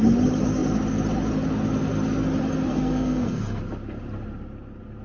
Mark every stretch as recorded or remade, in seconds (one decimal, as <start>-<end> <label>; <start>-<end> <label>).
0.0-2.7 recorded; 2.7-3.6 remade; 3.6-5.0 recorded